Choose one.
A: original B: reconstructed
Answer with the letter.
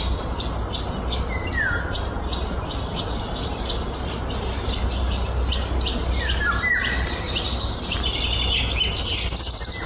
A